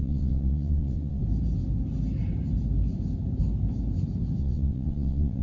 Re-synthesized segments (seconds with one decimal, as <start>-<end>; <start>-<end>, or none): 0.0-1.2; 4.4-5.4